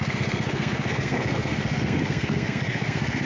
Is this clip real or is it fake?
fake